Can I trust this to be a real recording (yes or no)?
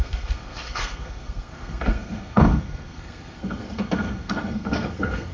no